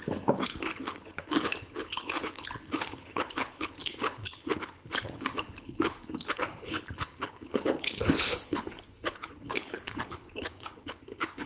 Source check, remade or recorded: remade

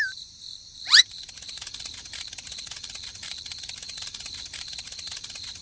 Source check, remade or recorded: remade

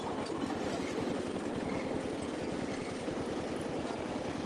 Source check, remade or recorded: recorded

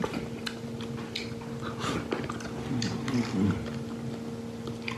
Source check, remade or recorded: recorded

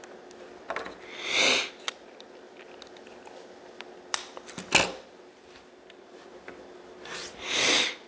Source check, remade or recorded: recorded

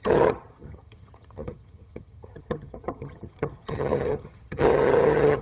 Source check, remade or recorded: remade